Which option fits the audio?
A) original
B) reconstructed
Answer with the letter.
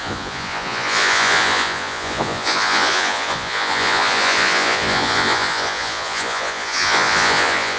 B